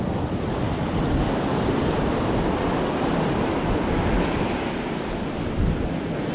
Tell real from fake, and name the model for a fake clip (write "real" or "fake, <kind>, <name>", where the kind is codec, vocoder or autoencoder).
real